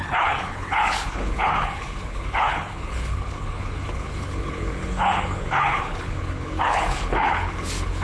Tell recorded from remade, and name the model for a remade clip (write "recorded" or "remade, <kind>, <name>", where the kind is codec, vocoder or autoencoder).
remade, codec, HILCodec